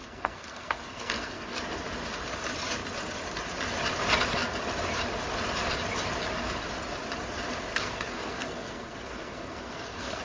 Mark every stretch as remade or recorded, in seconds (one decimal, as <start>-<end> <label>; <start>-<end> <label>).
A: 0.0-1.6 remade; 1.6-7.7 recorded; 7.7-10.2 remade